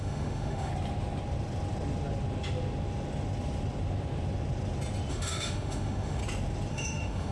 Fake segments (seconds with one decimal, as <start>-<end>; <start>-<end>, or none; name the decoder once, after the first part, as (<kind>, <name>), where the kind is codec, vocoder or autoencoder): 0.0-0.7 (autoencoder, DAC-VAE); 5.1-6.2; 6.7-7.3